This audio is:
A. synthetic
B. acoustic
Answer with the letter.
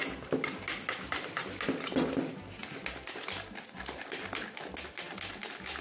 B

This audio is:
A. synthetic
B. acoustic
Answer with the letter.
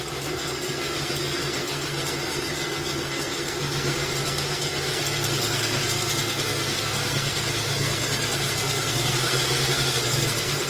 A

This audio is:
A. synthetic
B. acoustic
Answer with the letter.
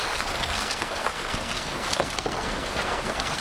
A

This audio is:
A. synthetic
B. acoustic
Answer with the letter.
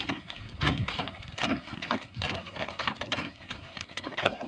A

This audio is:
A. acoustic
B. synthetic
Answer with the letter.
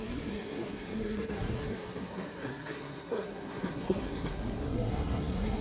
B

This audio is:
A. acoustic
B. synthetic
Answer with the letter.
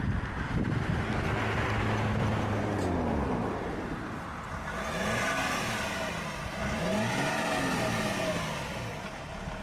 A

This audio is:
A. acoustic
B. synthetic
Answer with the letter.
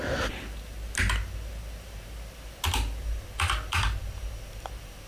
A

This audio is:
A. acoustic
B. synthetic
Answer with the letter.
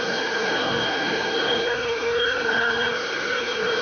B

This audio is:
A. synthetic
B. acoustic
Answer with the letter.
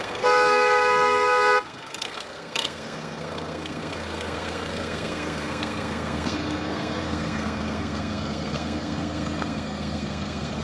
A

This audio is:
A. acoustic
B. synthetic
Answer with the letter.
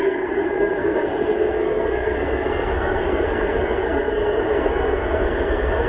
B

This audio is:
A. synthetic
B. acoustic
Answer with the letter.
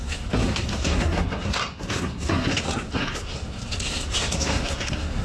A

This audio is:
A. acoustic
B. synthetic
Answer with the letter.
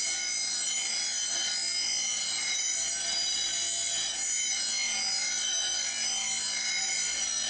A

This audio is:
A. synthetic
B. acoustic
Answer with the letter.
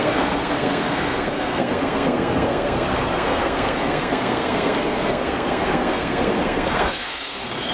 A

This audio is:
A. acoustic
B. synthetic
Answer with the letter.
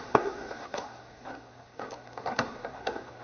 B